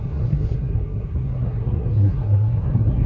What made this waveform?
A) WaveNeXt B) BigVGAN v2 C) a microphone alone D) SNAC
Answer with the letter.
D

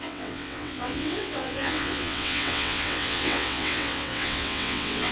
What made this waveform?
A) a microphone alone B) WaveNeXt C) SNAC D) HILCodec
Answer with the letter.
B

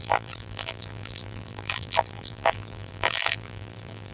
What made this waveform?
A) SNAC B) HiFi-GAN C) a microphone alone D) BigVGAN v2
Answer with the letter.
D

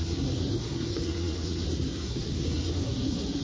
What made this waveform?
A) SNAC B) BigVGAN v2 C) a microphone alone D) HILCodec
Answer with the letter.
A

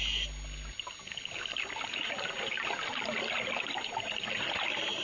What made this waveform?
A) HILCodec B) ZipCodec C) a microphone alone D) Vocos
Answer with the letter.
C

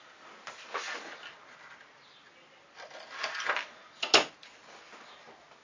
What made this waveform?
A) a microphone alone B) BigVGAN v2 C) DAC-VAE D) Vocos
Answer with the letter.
A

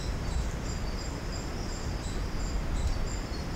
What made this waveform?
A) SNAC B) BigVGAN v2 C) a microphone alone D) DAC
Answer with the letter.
B